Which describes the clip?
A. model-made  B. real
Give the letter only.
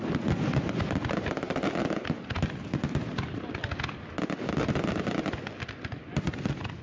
B